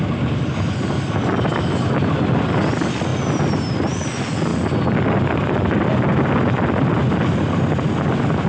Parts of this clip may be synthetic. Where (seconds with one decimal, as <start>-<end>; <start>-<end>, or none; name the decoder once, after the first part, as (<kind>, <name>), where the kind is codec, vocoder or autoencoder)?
none